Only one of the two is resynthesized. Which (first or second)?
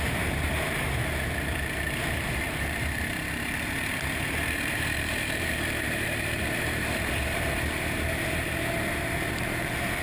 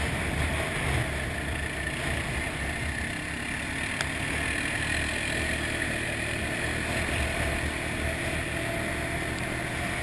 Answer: first